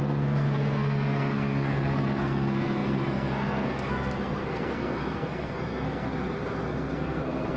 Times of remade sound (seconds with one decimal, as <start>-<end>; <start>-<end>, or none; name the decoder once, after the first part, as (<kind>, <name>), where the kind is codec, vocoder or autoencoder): 0.0-7.6 (codec, SNAC)